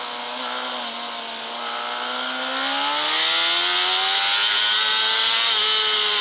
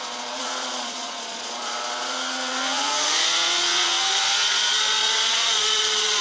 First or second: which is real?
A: first